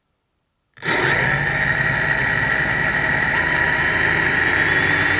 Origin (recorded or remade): recorded